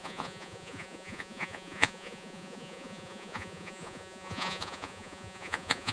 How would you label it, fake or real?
fake